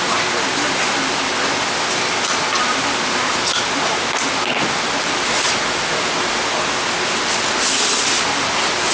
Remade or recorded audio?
recorded